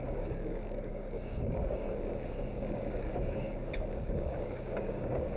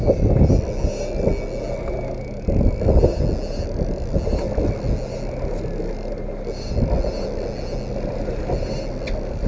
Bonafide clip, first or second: second